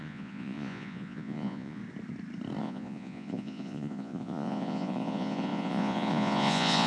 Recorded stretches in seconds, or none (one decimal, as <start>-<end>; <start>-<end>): 1.8-2.6